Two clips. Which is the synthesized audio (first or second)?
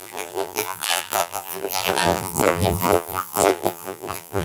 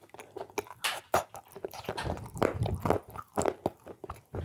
first